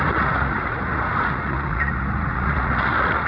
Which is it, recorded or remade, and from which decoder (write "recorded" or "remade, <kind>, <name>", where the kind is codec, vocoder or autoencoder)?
remade, vocoder, Vocos